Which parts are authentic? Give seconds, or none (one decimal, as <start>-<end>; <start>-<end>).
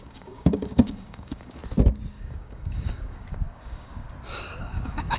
1.6-2.1; 4.0-4.6